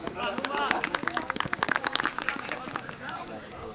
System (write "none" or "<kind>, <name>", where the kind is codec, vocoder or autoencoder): codec, DAC